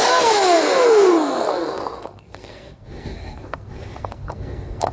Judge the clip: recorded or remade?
remade